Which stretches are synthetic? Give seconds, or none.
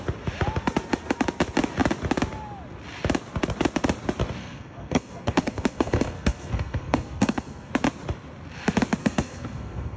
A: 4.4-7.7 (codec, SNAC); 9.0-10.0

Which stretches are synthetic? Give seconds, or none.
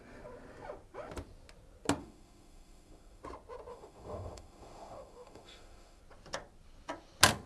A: 2.0-3.2 (autoencoder, DAC-VAE); 3.7-6.0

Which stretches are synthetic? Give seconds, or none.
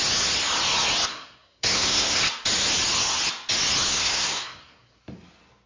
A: 1.1-2.2 (codec, SNAC); 3.9-5.0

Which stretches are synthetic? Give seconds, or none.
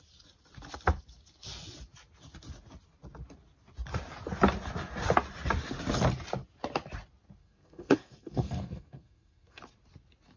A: 7.4-9.6 (codec, SNAC)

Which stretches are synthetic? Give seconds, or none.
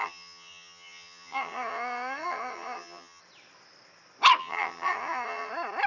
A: 0.0-3.2 (vocoder, HiFi-GAN); 4.4-5.5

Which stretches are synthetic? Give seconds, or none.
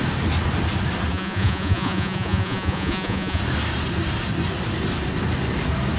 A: 1.1-3.4 (vocoder, Vocos)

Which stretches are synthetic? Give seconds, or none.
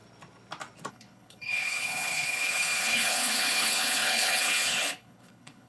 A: 0.9-5.7 (codec, HILCodec)